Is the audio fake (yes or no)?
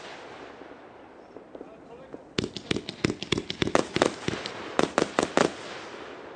yes